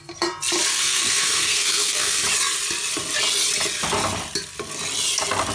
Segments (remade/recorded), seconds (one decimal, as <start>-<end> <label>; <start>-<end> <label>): 0.0-0.7 recorded; 0.7-2.2 remade; 2.2-5.5 recorded